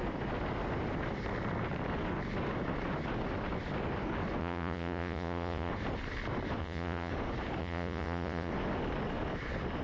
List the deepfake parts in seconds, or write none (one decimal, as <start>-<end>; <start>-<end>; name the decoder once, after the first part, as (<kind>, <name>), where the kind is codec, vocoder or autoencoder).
4.4-5.7 (vocoder, Vocos); 6.6-7.1; 7.6-8.5